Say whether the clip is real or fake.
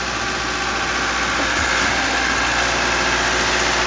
real